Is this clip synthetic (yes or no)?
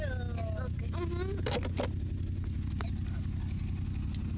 no